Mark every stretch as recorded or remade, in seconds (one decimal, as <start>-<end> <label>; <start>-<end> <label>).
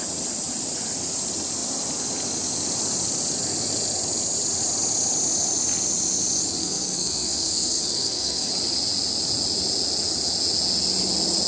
0.0-6.6 recorded; 6.6-8.5 remade; 8.5-11.5 recorded